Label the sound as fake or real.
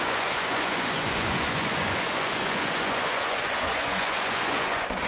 fake